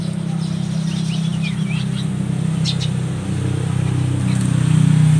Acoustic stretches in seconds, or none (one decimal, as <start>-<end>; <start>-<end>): 0.0-5.2